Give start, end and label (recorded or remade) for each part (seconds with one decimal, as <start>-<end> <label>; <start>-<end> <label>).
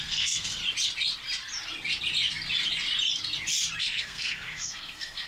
0.0-0.6 remade; 0.6-3.8 recorded; 3.8-5.3 remade